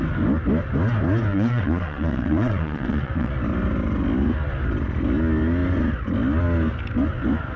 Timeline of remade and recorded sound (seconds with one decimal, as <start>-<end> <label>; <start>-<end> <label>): 0.0-1.3 recorded; 1.3-3.3 remade; 3.3-7.6 recorded